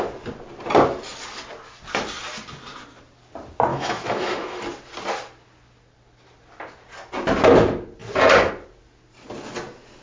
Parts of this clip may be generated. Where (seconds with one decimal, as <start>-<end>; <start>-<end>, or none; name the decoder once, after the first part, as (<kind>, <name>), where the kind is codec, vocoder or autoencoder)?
3.7-4.6 (autoencoder, DAC-VAE)